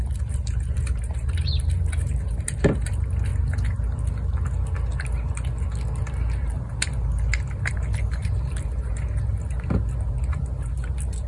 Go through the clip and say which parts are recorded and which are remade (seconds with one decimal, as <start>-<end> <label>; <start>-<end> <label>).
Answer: 0.0-3.3 remade; 3.3-6.1 recorded; 6.1-11.3 remade